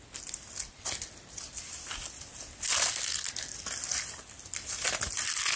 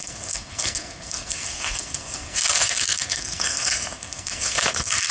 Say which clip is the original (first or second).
first